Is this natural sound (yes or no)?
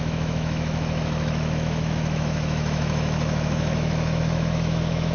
no